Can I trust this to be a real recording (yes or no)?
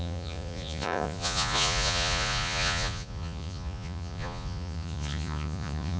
no